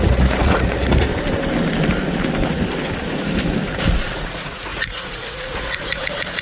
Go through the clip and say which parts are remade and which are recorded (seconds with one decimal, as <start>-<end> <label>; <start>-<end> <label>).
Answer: 0.0-1.1 remade; 1.1-3.7 recorded; 3.7-6.4 remade